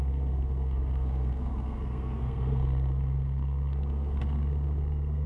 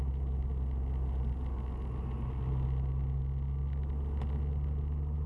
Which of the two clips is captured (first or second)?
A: second